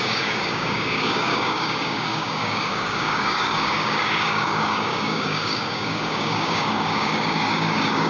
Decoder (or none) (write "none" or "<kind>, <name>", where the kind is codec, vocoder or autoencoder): codec, DAC